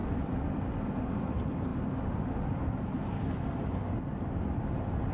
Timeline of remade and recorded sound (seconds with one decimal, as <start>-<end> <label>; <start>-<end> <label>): 0.0-5.1 recorded